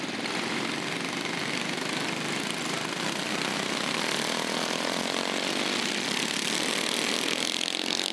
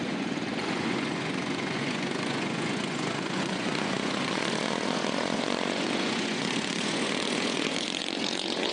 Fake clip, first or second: second